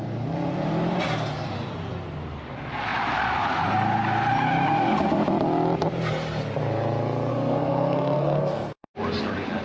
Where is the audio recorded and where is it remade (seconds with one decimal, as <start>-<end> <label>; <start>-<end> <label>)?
0.0-7.3 recorded; 7.3-8.9 remade; 8.9-9.6 recorded